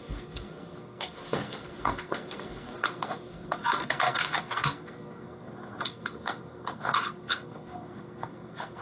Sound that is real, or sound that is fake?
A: fake